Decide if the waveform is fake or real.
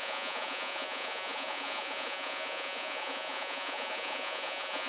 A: fake